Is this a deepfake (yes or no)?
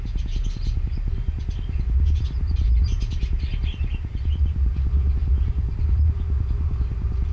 no